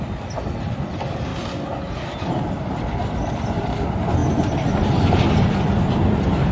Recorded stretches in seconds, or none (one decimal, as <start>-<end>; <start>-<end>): 0.0-6.5